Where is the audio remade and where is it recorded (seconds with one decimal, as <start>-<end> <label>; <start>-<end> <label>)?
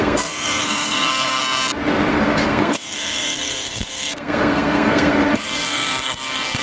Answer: 0.0-1.4 remade; 1.4-2.1 recorded; 2.1-6.6 remade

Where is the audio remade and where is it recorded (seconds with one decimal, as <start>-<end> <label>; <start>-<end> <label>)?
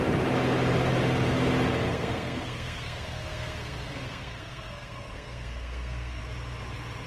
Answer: 0.0-1.9 recorded; 1.9-6.2 remade; 6.2-7.1 recorded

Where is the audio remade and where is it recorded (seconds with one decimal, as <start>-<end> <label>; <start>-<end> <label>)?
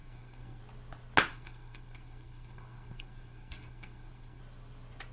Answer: 0.0-0.6 remade; 0.6-1.3 recorded; 1.3-4.4 remade; 4.4-5.1 recorded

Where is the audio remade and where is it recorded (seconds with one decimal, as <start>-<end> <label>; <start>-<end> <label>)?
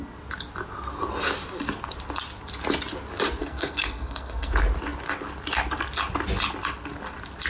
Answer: 0.0-3.4 recorded; 3.4-4.5 remade; 4.5-7.5 recorded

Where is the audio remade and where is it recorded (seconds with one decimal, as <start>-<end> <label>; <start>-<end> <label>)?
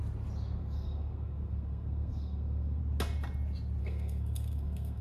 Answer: 0.0-0.6 recorded; 0.6-2.8 remade; 2.8-3.8 recorded; 3.8-5.0 remade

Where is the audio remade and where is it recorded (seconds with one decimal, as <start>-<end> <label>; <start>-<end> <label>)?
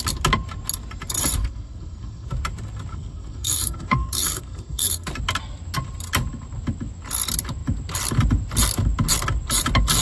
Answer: 0.0-1.4 recorded; 1.4-2.3 remade; 2.3-2.9 recorded; 2.9-5.1 remade; 5.1-10.0 recorded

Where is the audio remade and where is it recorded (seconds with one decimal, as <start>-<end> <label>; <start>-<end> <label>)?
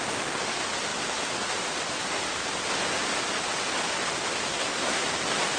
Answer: 0.0-4.5 recorded; 4.5-5.1 remade; 5.1-5.6 recorded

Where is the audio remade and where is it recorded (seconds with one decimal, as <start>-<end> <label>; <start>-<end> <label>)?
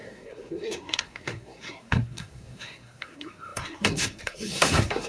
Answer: 0.0-5.1 remade